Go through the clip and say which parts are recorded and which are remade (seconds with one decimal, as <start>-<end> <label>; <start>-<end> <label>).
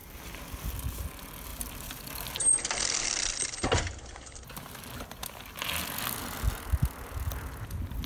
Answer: 0.0-8.1 recorded